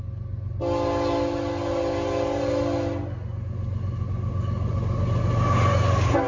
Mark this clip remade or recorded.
recorded